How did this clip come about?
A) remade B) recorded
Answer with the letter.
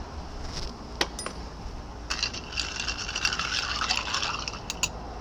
B